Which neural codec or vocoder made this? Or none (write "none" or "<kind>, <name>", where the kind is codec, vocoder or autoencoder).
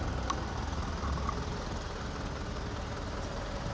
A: none